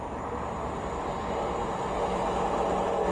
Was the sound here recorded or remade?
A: recorded